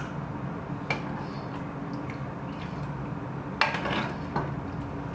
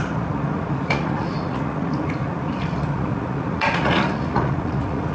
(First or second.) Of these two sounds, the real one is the first